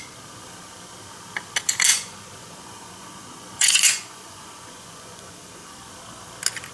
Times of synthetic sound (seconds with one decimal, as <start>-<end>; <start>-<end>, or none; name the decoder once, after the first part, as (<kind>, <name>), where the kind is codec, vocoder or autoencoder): 1.9-5.9 (vocoder, Vocos)